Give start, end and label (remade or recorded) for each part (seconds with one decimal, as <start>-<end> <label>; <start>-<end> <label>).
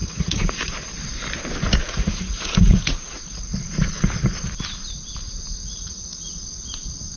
0.0-0.7 remade; 0.7-1.8 recorded; 1.8-3.4 remade; 3.4-5.6 recorded; 5.6-6.3 remade; 6.3-7.2 recorded